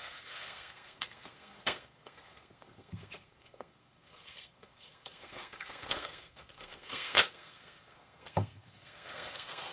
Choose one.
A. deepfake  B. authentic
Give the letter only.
A